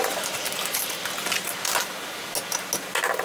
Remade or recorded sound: recorded